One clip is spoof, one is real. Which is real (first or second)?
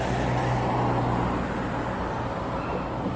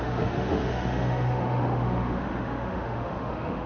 first